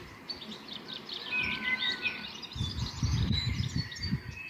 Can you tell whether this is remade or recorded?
remade